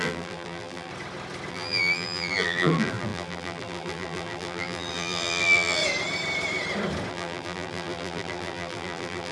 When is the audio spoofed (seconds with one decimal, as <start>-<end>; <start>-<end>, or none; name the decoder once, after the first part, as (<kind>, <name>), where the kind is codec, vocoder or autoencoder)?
0.0-0.9 (vocoder, BigVGAN v2); 1.5-5.8; 7.1-9.3